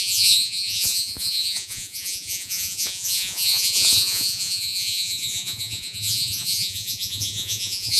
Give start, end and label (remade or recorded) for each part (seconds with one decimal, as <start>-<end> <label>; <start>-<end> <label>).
0.0-8.0 remade